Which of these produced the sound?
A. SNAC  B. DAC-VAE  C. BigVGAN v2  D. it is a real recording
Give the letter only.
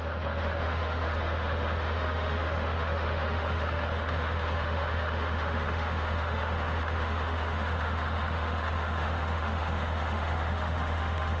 B